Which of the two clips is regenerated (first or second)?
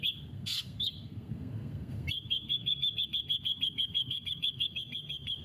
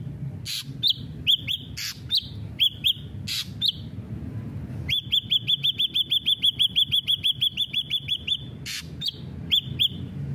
first